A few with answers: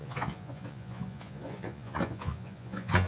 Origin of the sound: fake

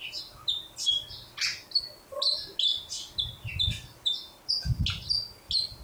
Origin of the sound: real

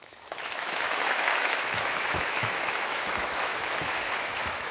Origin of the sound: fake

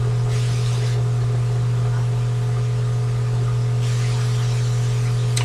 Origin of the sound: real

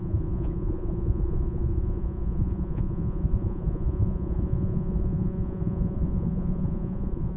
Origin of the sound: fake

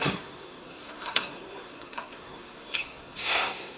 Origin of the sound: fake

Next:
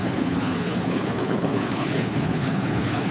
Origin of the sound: fake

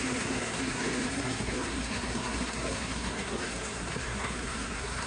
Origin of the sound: fake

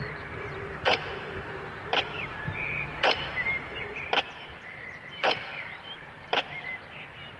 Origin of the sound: fake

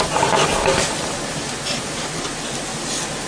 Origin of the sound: real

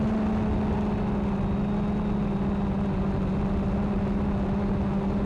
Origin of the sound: real